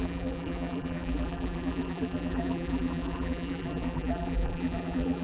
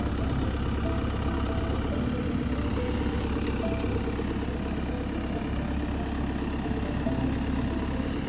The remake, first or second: first